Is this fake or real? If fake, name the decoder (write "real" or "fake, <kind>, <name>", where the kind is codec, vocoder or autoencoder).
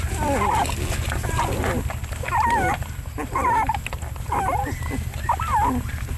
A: real